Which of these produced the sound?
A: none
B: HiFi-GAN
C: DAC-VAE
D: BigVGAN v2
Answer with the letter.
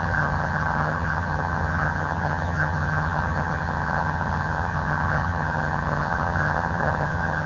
B